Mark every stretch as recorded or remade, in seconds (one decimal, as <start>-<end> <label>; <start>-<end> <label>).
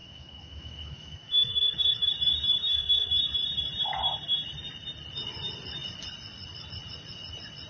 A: 0.0-2.1 remade; 2.1-2.6 recorded; 2.6-3.1 remade; 3.1-7.7 recorded